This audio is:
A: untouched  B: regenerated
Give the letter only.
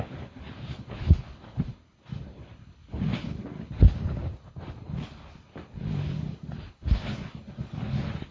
B